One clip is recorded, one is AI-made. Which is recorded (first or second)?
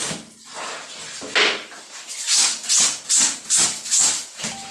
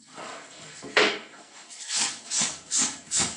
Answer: first